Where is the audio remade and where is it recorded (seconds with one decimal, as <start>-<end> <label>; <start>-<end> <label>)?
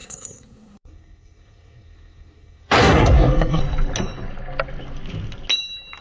0.0-3.6 remade; 3.6-6.0 recorded